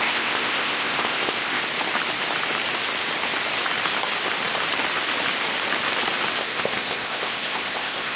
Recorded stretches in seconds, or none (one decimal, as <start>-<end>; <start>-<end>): 1.6-6.4